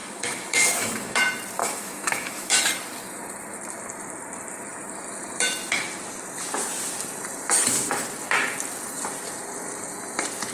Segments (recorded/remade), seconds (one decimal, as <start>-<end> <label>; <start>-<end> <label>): 0.0-1.2 remade; 1.2-1.6 recorded; 1.6-2.6 remade; 2.6-10.5 recorded